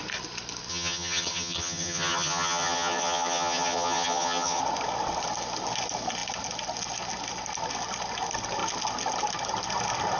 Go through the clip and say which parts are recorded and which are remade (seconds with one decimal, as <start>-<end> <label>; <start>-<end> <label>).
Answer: 0.0-0.7 recorded; 0.7-4.6 remade; 4.6-10.2 recorded